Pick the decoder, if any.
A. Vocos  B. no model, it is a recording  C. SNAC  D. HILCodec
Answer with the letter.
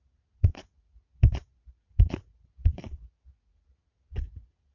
A